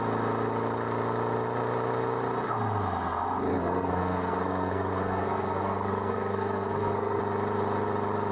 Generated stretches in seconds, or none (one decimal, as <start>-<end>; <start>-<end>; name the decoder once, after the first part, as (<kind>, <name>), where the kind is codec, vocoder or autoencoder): 3.5-7.2 (codec, SNAC)